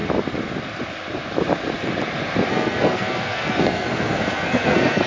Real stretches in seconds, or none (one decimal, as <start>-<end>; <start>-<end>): 0.0-2.5